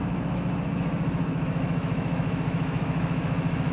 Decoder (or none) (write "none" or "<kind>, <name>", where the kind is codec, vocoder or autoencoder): autoencoder, DAC-VAE